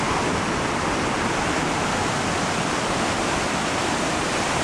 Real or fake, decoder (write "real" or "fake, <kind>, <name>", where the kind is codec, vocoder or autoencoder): real